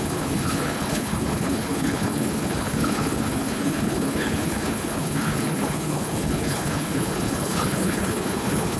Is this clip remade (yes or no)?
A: yes